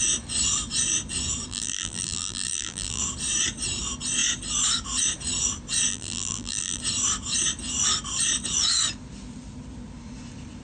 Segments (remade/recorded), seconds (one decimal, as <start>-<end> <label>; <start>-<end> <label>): 0.0-1.5 recorded; 1.5-3.0 remade; 3.0-5.9 recorded; 5.9-6.8 remade; 6.8-10.6 recorded